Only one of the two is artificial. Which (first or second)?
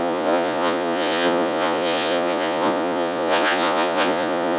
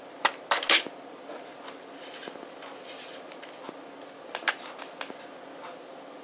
first